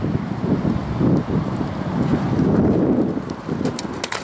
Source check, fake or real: real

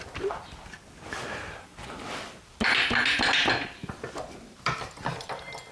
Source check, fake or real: real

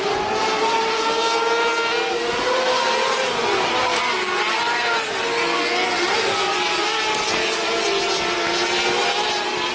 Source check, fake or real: real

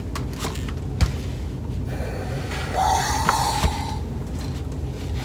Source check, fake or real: real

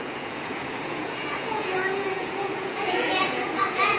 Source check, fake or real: fake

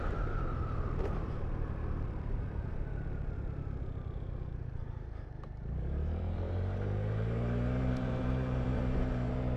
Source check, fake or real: fake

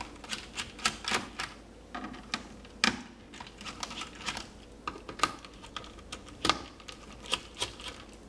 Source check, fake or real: real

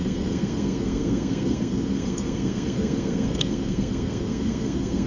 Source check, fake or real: fake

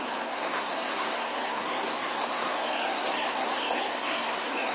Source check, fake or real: fake